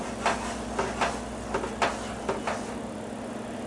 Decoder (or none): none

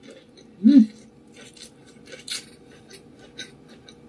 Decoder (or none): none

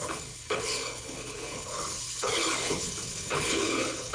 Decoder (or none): codec, HILCodec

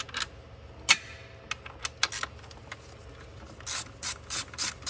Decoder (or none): none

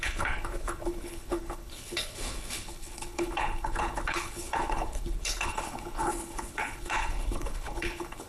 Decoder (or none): codec, HILCodec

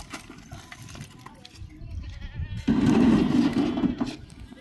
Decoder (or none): none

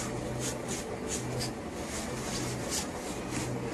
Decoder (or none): none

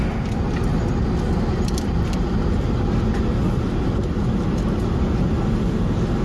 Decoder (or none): none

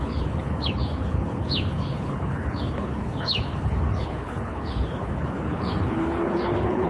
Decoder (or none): codec, HILCodec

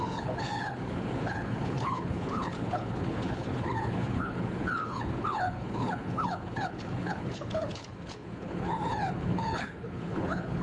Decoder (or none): codec, HILCodec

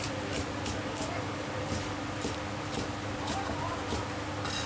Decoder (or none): none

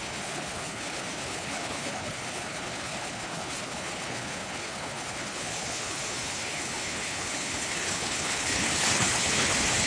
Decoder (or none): codec, HILCodec